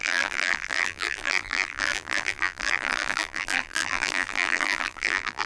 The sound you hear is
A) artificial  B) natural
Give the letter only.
A